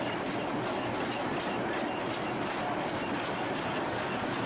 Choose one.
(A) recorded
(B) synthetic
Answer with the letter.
A